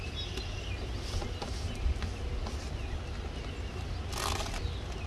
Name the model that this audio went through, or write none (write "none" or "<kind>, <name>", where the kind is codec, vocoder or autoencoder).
none